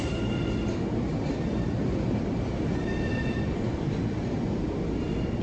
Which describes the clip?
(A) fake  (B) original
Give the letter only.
B